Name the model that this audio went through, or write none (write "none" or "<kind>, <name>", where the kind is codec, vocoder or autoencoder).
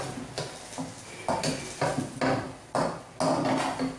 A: none